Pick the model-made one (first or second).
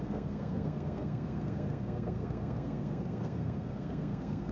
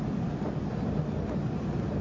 first